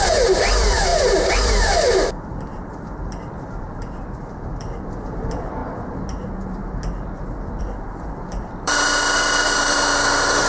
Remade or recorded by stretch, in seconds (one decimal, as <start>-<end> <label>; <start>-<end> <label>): 0.0-5.6 remade; 5.6-7.6 recorded; 7.6-10.5 remade